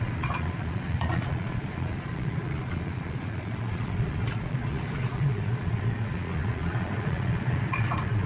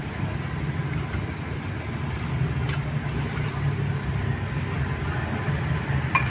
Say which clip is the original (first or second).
second